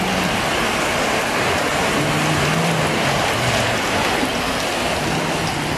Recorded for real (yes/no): yes